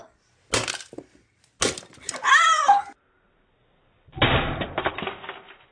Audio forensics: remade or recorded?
recorded